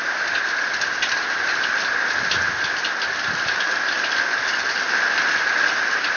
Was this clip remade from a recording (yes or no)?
no